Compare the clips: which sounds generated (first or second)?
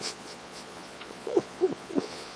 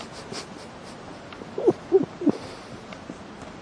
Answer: first